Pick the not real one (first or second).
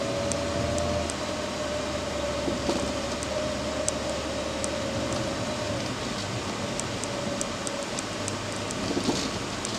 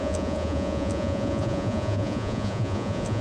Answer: second